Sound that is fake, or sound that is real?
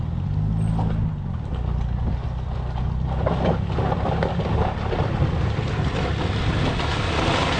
real